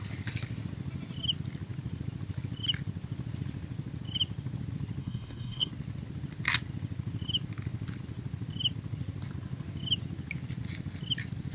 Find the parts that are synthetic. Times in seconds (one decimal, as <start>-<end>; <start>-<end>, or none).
5.0-5.7